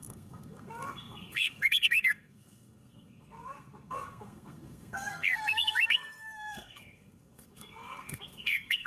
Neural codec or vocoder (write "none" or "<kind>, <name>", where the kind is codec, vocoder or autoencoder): codec, SNAC